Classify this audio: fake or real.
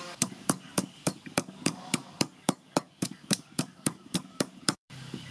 fake